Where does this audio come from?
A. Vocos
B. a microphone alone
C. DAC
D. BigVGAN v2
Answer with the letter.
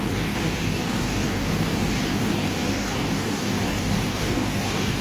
C